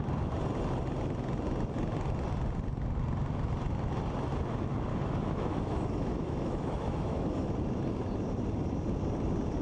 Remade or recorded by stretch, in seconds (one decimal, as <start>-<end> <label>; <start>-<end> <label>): 0.0-4.9 recorded; 4.9-7.5 remade; 7.5-9.6 recorded